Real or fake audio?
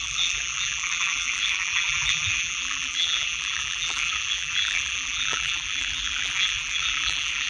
fake